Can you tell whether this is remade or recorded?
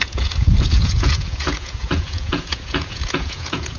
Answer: remade